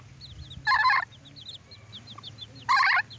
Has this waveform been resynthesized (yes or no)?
no